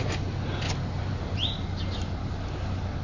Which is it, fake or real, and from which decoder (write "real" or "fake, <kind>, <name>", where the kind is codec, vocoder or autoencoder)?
real